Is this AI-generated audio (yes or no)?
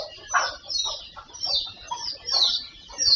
no